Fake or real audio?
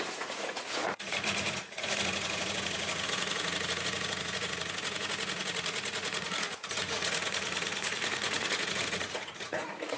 fake